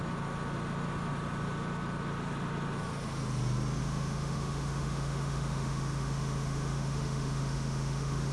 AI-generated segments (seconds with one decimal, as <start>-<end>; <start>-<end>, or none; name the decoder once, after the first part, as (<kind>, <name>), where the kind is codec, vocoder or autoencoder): 3.8-8.3 (autoencoder, DAC-VAE)

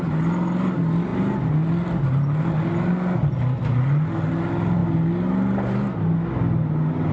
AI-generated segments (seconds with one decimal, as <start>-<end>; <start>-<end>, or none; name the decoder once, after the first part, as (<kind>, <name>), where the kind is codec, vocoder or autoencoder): none